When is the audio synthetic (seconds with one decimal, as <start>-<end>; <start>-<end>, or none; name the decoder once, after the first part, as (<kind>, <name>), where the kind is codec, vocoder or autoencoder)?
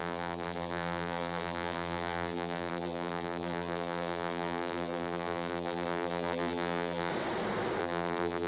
0.0-7.1 (vocoder, BigVGAN v2); 7.8-8.5